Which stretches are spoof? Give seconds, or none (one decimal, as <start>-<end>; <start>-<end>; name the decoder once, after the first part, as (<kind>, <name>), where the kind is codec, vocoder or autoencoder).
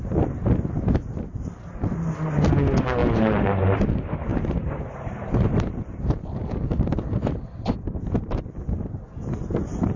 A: 3.0-3.9 (vocoder, BigVGAN v2); 4.3-7.4